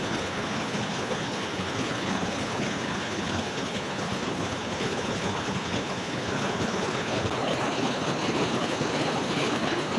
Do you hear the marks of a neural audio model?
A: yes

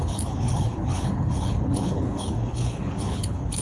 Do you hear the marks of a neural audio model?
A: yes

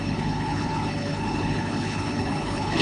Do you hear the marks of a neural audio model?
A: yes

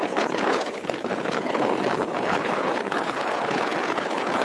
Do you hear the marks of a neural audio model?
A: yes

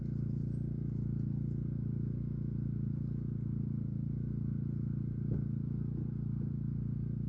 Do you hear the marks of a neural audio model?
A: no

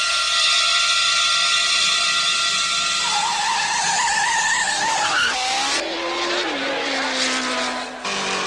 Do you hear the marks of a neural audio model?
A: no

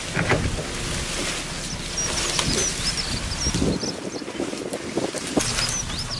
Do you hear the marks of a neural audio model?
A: no